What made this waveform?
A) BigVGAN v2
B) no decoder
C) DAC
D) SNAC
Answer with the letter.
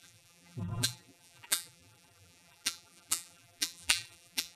A